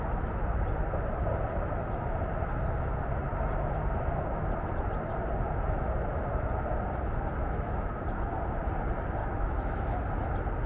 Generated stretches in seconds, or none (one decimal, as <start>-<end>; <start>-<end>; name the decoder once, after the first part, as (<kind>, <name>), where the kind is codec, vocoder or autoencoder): 7.4-7.9 (autoencoder, DAC-VAE); 9.2-10.0